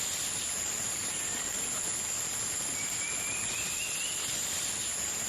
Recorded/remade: recorded